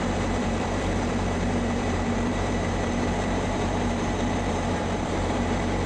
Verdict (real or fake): fake